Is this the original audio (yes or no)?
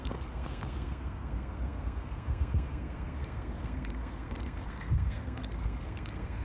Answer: no